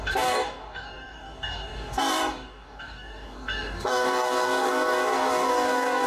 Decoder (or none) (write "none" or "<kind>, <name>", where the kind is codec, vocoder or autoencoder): codec, DAC